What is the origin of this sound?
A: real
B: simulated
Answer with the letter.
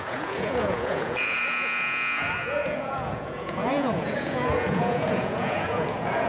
B